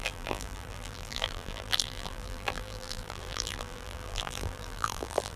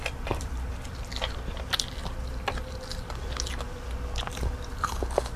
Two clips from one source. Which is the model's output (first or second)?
first